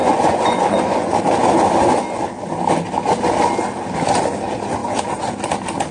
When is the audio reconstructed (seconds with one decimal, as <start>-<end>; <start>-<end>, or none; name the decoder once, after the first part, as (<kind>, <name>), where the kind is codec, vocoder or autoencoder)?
0.0-1.2 (vocoder, Vocos)